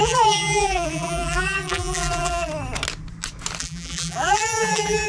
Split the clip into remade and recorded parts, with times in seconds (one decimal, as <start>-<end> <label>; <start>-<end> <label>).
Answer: 0.0-2.5 remade; 2.5-3.6 recorded; 3.6-5.1 remade